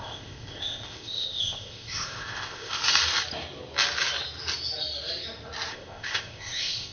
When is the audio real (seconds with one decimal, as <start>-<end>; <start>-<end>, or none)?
2.8-5.7